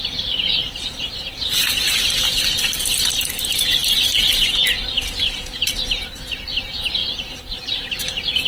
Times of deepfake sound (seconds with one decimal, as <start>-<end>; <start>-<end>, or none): 0.6-2.0; 3.8-4.3; 7.0-7.9

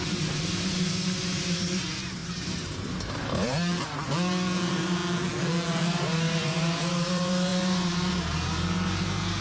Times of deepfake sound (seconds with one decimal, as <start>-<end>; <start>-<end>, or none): 0.0-5.0; 5.8-9.4

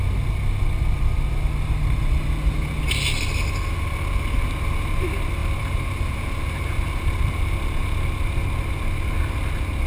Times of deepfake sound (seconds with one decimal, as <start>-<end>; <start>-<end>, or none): 5.4-7.0

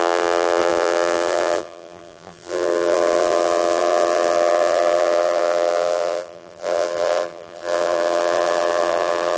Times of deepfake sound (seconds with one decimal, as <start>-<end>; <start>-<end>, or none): 0.0-9.4